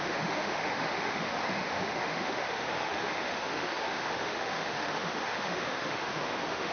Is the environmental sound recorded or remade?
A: remade